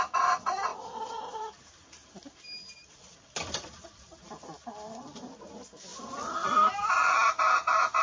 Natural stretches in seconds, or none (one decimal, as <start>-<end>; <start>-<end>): 0.0-0.7; 2.3-8.0